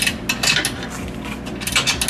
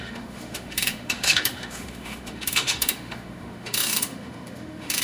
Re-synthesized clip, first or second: second